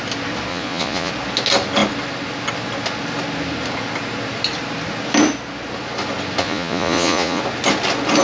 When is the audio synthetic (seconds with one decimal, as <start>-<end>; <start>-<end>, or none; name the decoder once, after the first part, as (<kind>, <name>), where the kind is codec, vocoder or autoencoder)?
0.5-1.1 (vocoder, Vocos); 6.4-7.4